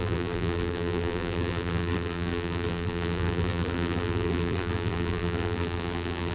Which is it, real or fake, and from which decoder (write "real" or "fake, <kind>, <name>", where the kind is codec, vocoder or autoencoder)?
fake, vocoder, BigVGAN v2